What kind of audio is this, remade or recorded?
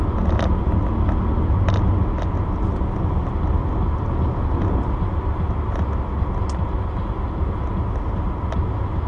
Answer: recorded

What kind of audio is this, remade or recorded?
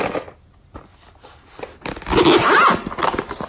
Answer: recorded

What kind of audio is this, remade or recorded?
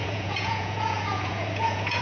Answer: remade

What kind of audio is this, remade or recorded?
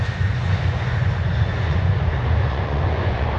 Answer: remade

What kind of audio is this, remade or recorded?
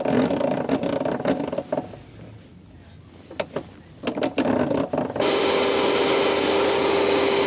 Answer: recorded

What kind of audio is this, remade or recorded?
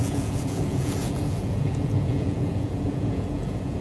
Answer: remade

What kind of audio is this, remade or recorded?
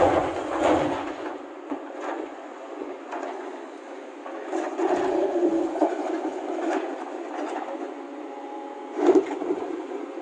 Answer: remade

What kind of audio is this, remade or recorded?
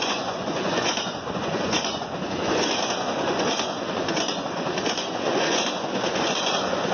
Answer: remade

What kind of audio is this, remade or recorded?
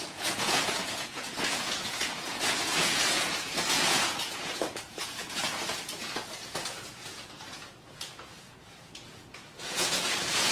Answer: remade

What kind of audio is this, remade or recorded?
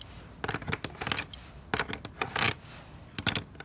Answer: recorded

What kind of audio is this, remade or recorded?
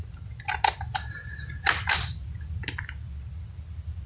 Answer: recorded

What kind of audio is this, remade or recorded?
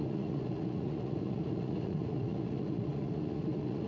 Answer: remade